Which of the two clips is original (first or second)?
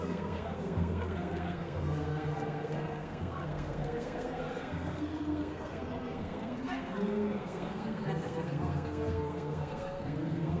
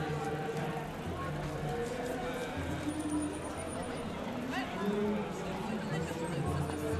second